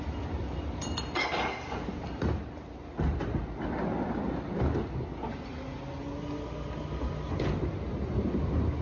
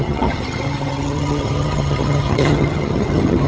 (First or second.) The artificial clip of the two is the second